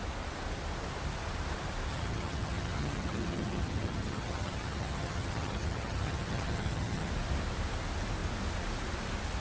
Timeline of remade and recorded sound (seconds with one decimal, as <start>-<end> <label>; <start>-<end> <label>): 0.0-1.9 recorded; 1.9-7.1 remade; 7.1-9.4 recorded